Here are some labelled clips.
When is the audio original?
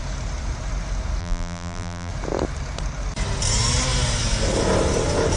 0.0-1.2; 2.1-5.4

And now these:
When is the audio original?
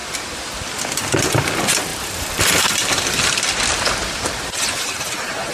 0.8-1.9; 5.1-5.5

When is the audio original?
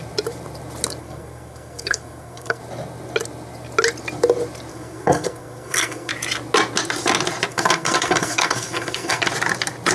0.0-1.0; 2.6-4.7; 6.1-7.5; 9.2-9.9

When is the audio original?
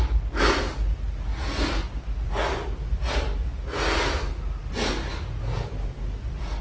0.0-6.6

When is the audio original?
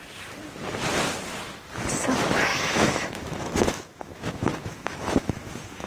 0.0-2.5